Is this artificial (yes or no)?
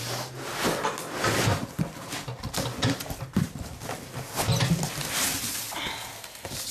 no